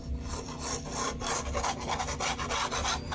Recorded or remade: recorded